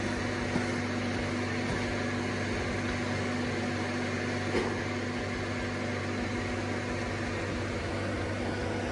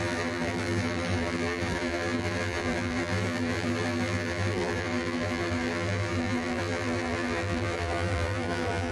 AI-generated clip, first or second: second